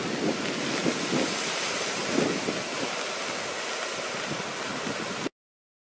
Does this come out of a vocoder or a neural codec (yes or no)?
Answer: no